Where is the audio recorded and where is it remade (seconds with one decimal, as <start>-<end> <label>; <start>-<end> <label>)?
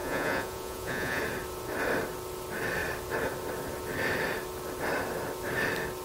0.0-1.2 remade; 1.2-6.0 recorded